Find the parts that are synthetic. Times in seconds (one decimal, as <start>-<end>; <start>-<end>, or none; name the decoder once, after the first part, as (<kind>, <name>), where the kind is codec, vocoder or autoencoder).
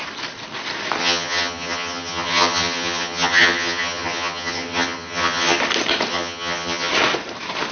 1.0-5.6 (vocoder, HiFi-GAN); 6.1-6.9